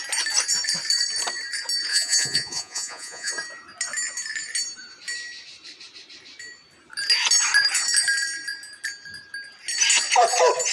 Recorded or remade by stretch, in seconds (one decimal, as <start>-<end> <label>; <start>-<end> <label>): 0.0-1.9 recorded; 1.9-3.3 remade; 3.3-10.7 recorded